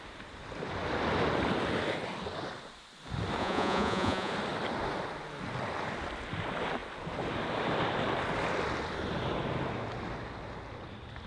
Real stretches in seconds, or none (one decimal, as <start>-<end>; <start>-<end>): 0.0-3.4; 4.3-11.3